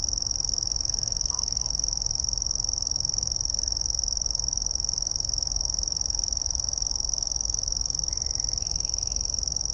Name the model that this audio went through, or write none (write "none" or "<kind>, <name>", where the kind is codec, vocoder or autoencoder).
autoencoder, DAC-VAE